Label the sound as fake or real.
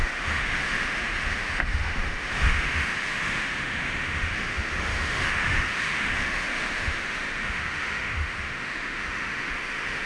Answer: fake